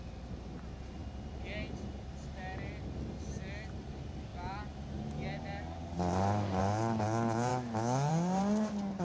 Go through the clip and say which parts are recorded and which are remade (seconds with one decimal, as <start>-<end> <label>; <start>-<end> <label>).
0.0-7.5 recorded; 7.5-8.1 remade; 8.1-9.0 recorded